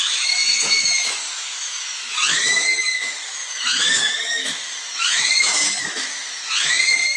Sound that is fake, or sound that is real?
fake